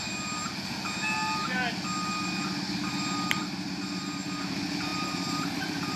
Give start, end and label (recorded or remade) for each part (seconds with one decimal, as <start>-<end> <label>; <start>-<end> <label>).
0.0-4.9 recorded; 4.9-6.0 remade